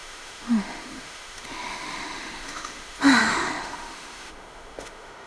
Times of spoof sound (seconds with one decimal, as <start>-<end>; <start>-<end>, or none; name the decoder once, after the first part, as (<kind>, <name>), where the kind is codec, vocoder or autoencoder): 0.0-5.3 (autoencoder, DAC-VAE)